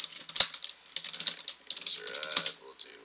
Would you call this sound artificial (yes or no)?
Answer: no